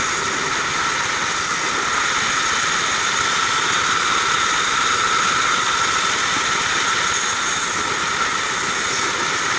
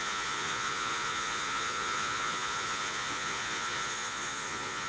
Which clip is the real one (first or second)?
first